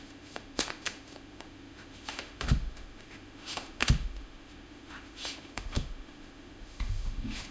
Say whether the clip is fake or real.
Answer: fake